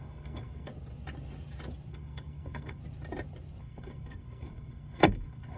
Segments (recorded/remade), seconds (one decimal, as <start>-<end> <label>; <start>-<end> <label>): 0.0-0.7 remade; 0.7-1.9 recorded; 1.9-2.8 remade; 2.8-3.6 recorded; 3.6-5.6 remade